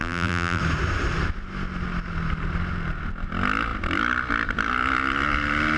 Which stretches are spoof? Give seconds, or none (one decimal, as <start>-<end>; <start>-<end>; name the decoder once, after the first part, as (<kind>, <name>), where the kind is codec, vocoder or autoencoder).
0.0-0.6 (vocoder, BigVGAN v2)